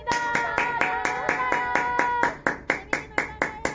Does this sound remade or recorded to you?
recorded